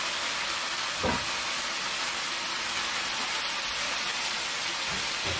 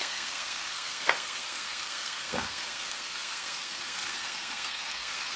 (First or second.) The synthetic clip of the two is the second